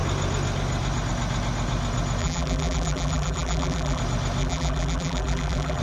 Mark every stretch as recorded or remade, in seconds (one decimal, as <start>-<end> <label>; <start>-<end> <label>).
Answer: 0.0-2.2 recorded; 2.2-4.0 remade; 4.0-4.4 recorded; 4.4-5.8 remade